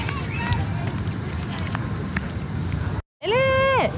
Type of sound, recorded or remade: recorded